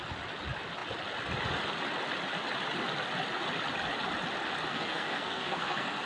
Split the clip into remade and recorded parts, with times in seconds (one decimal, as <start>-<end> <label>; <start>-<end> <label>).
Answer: 0.0-4.7 recorded; 4.7-6.0 remade